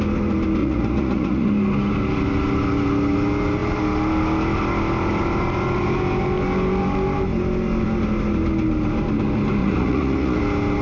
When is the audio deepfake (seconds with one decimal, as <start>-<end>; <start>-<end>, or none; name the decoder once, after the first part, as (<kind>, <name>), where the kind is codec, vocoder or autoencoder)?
0.6-1.5 (vocoder, Vocos); 9.6-10.4